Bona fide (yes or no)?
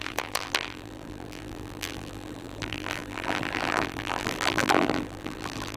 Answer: no